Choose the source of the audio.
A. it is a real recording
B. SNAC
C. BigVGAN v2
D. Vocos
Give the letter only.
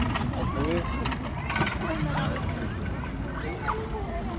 A